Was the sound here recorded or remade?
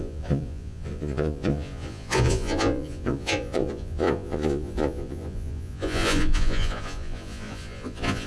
remade